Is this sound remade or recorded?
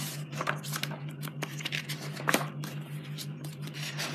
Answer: recorded